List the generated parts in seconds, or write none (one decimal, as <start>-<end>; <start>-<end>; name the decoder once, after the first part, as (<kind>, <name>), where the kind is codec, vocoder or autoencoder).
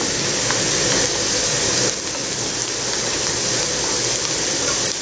none